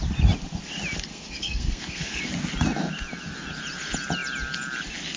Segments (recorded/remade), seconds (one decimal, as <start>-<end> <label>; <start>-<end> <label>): 0.0-1.1 recorded; 1.1-2.2 remade; 2.2-5.2 recorded